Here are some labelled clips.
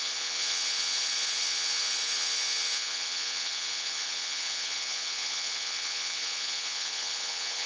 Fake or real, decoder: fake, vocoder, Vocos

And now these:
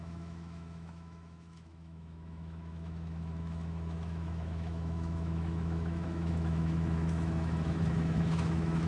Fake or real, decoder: fake, autoencoder, DAC-VAE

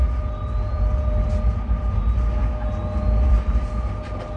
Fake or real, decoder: real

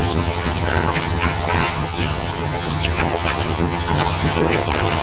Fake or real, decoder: fake, vocoder, HiFi-GAN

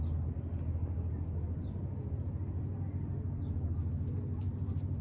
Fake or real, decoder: real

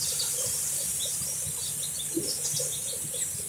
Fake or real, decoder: real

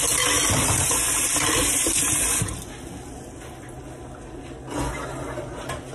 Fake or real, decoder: real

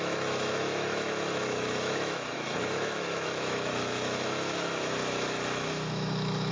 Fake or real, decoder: fake, autoencoder, DAC-VAE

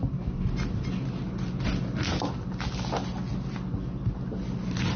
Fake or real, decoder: real